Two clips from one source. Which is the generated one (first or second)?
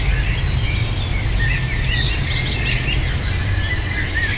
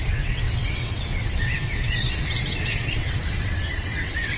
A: second